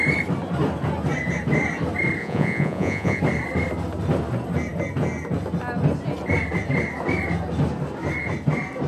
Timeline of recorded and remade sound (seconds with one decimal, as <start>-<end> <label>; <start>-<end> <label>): 0.0-2.2 recorded; 2.2-3.2 remade; 3.2-8.9 recorded